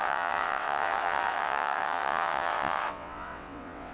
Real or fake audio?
fake